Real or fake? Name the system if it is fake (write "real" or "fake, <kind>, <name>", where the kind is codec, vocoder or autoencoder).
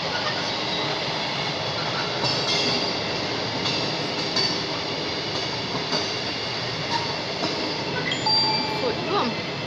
real